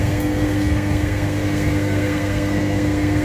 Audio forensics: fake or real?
fake